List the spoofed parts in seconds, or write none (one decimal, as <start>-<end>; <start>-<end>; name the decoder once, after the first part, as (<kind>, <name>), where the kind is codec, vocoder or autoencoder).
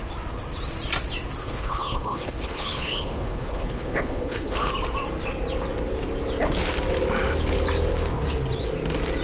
1.4-4.7 (codec, HILCodec)